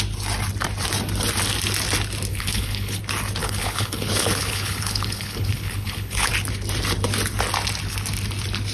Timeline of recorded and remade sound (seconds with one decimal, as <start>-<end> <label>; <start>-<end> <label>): 0.0-2.3 recorded; 2.3-3.0 remade; 3.0-3.4 recorded; 3.4-6.3 remade; 6.3-8.7 recorded